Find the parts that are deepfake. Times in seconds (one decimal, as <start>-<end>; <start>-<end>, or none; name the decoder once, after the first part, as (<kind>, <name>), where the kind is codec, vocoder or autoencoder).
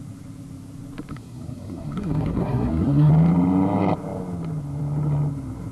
1.1-3.1 (codec, SNAC)